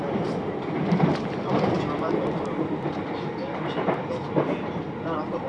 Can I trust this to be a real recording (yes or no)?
yes